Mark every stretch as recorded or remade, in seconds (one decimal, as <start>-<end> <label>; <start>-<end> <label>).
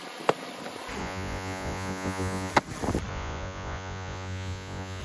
0.0-1.0 recorded; 1.0-2.5 remade; 2.5-3.1 recorded; 3.1-5.0 remade